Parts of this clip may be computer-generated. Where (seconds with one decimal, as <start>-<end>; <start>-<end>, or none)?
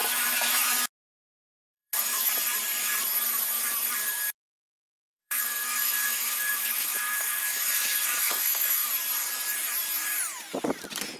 0.0-0.7; 1.7-2.3; 4.7-8.9